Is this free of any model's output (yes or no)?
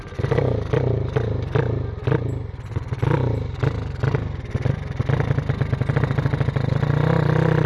yes